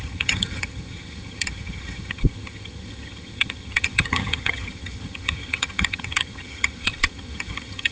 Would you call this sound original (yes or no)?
no